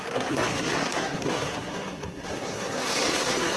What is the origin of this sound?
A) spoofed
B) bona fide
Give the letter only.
A